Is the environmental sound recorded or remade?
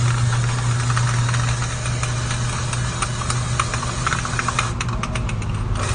recorded